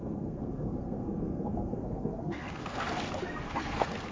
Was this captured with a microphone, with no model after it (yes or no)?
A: no